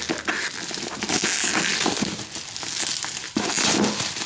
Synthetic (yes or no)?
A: no